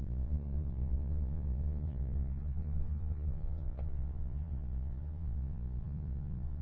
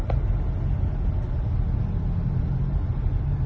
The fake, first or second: first